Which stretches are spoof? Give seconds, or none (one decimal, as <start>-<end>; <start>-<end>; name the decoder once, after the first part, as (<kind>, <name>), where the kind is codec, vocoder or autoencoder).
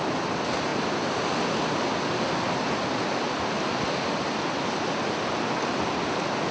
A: none